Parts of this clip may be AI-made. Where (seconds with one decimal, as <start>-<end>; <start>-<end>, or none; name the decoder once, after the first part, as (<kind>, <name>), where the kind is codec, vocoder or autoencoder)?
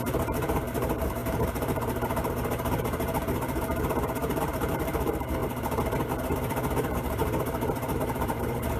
0.0-5.4 (vocoder, BigVGAN v2); 6.3-7.2; 7.9-8.8